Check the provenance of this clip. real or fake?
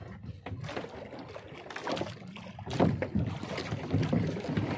real